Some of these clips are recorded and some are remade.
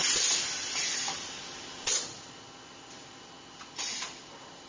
recorded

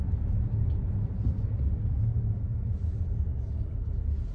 recorded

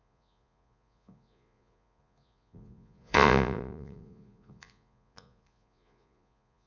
remade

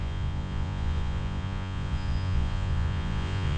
remade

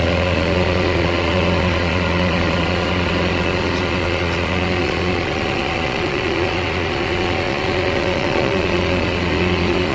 remade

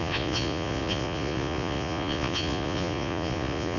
remade